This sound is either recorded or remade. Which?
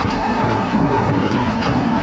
remade